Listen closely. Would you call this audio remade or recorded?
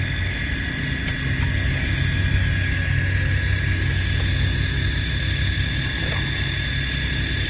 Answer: recorded